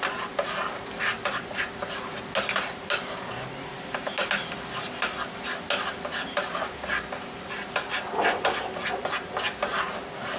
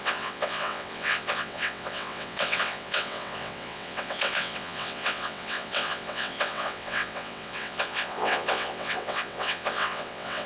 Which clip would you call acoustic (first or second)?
first